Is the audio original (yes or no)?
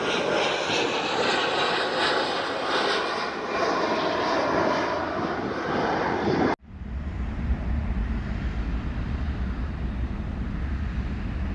yes